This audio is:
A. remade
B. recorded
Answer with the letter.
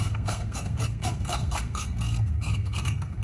A